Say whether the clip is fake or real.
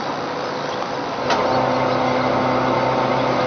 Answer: real